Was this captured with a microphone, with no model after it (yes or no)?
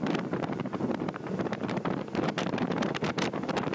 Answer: no